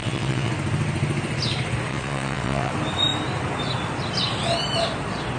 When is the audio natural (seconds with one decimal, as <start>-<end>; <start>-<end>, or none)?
0.5-1.9; 2.7-5.4